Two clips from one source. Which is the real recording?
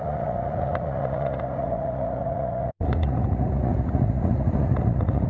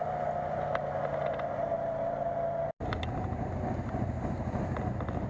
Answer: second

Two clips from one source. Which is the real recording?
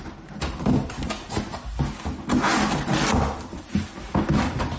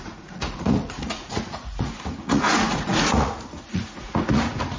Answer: first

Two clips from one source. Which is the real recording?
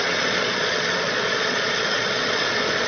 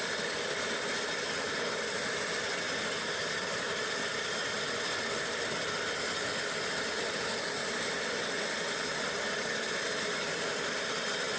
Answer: second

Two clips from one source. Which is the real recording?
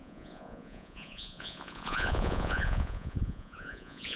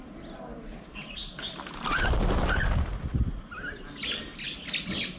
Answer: second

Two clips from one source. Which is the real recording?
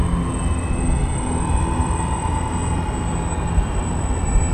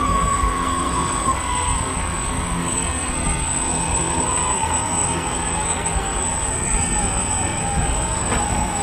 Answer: first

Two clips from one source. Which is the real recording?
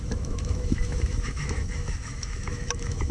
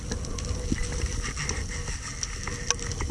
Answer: second